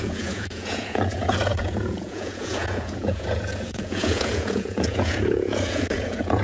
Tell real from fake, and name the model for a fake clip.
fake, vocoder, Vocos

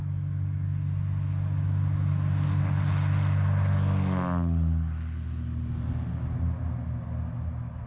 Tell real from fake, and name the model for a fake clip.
real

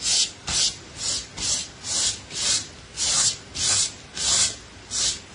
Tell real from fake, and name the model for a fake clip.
real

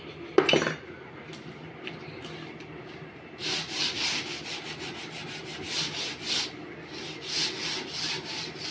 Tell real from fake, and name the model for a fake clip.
fake, vocoder, BigVGAN v2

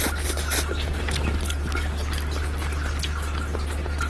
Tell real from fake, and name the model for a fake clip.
real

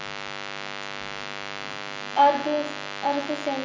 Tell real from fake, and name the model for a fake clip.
real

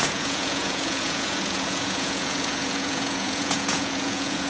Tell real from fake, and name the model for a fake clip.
fake, vocoder, Vocos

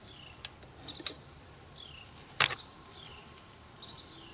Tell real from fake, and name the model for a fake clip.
real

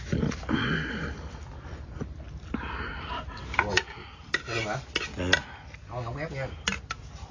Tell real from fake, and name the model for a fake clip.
real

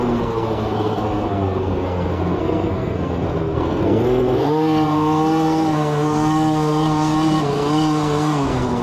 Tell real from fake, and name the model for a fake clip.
fake, codec, SNAC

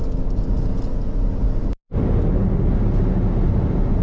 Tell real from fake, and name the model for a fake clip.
real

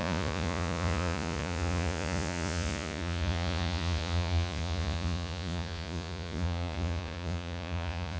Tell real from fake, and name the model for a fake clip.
fake, vocoder, Vocos